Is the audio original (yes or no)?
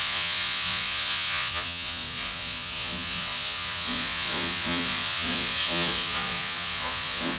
no